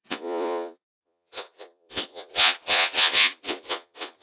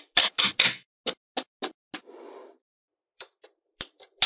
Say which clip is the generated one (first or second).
first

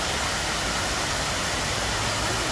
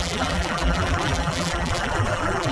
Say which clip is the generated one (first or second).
second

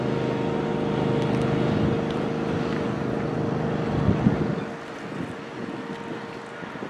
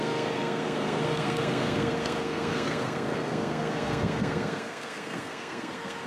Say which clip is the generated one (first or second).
second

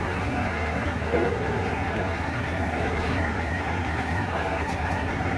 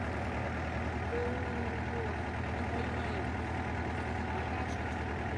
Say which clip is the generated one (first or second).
first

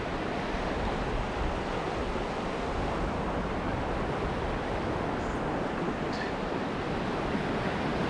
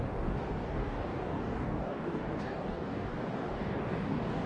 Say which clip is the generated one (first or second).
second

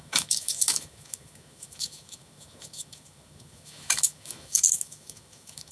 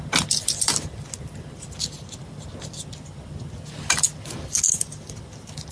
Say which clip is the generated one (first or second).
first